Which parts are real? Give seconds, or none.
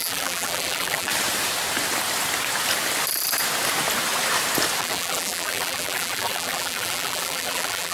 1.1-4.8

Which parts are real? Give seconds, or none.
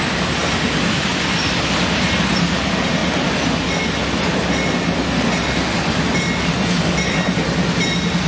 0.0-8.3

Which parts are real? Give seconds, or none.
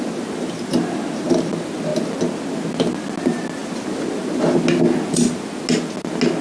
0.0-6.4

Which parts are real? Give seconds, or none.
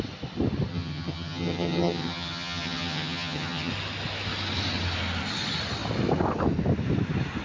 0.0-0.7; 3.7-7.4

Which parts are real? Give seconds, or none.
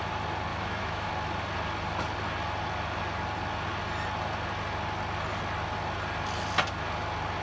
0.0-0.5; 1.1-7.4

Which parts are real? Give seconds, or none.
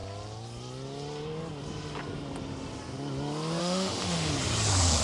0.0-3.6; 4.3-5.0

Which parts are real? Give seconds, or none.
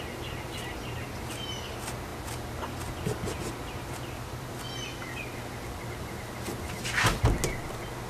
0.0-8.1